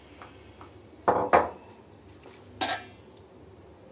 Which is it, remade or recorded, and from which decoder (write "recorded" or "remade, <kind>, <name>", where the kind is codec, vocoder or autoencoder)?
recorded